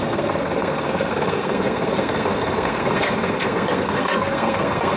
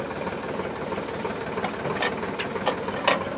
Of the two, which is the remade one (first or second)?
first